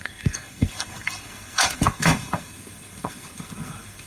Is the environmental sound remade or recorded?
remade